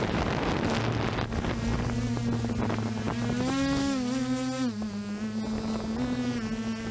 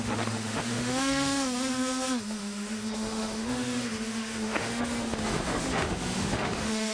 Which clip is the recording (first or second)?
first